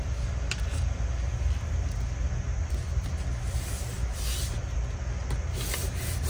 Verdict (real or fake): real